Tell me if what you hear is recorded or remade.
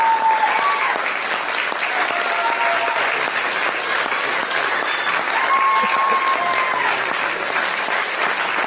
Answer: recorded